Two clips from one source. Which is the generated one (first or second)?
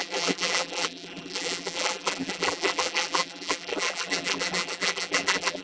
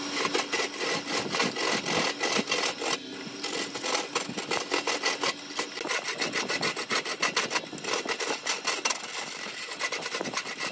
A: first